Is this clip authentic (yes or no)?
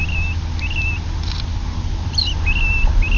yes